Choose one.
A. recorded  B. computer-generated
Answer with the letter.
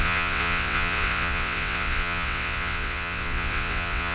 B